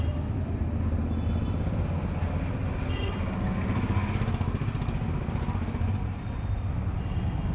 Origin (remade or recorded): recorded